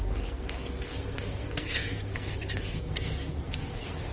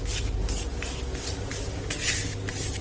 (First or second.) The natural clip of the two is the second